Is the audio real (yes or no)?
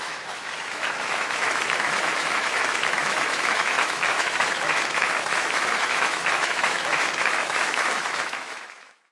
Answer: no